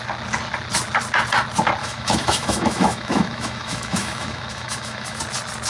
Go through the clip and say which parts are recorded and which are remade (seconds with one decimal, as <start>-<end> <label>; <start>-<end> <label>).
0.0-1.8 recorded; 1.8-5.2 remade; 5.2-5.7 recorded